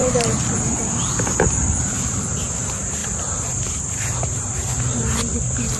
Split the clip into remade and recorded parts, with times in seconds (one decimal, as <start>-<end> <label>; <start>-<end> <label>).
0.0-3.0 remade; 3.0-4.1 recorded; 4.1-5.8 remade